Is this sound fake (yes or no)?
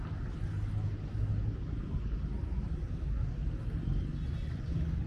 no